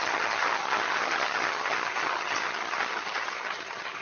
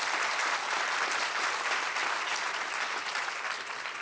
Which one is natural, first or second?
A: second